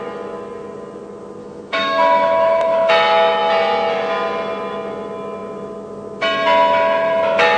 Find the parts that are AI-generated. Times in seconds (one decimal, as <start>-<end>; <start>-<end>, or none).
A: 1.4-2.9